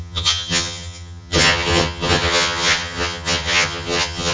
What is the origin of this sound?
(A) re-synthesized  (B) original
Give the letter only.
A